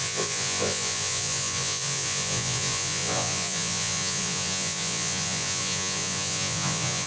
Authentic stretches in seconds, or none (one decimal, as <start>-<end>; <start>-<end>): none